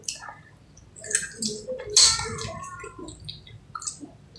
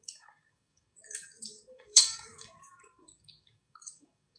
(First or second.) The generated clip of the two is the second